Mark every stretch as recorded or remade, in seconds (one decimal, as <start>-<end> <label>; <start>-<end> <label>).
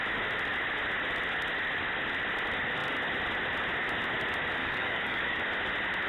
0.0-4.6 recorded; 4.6-5.4 remade; 5.4-6.1 recorded